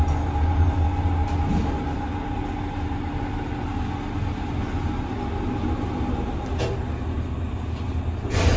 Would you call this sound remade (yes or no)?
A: no